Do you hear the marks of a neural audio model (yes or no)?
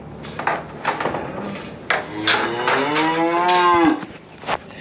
no